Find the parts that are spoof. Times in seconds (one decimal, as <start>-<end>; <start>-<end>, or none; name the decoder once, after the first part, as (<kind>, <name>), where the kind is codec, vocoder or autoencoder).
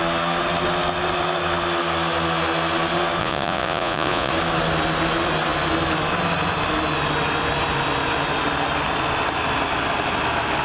3.2-4.3 (vocoder, Vocos)